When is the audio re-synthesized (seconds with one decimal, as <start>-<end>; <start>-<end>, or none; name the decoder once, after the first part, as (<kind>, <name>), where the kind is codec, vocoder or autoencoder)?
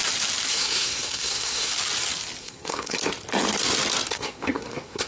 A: 0.5-1.7 (codec, SNAC); 2.4-3.0; 4.1-5.1